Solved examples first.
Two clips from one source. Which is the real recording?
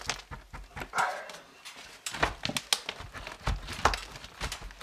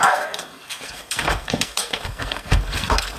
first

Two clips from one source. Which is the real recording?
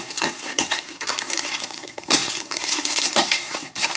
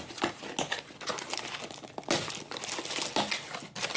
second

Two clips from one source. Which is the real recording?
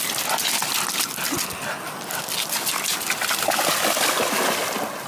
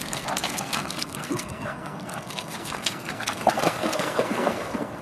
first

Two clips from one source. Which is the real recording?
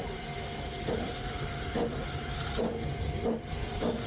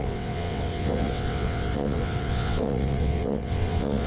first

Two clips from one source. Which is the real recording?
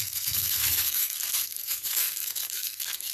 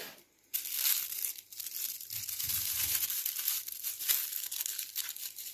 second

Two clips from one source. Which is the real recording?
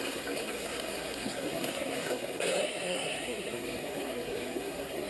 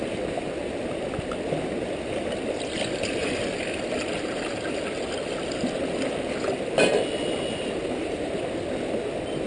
second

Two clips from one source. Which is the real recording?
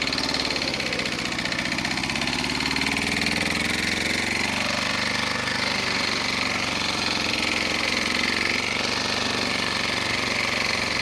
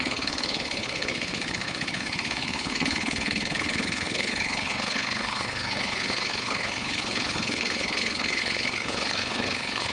first